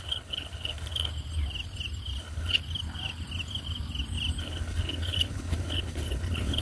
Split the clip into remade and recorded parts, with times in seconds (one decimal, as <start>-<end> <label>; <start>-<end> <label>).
0.0-1.1 remade; 1.1-2.2 recorded; 2.2-2.6 remade; 2.6-4.4 recorded; 4.4-6.6 remade